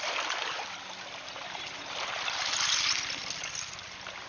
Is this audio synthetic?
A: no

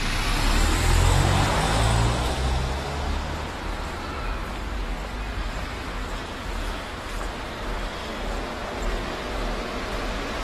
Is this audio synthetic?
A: no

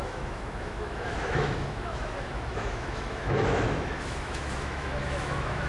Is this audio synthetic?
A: yes